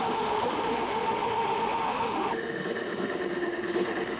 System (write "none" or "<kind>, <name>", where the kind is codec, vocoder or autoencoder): autoencoder, DAC-VAE